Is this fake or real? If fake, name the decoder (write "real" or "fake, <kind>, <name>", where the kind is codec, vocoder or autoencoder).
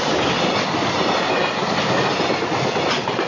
real